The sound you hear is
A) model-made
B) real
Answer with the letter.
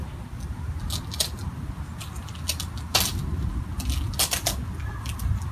B